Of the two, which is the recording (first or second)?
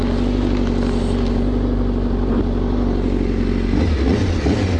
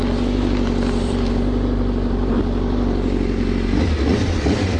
first